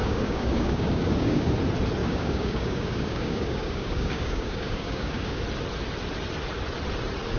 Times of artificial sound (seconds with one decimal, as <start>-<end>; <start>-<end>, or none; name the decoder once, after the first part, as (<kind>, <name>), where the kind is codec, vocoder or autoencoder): 0.0-1.5 (codec, DAC); 2.0-5.4